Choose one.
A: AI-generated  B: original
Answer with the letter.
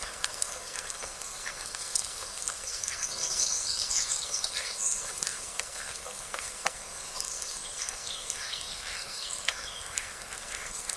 A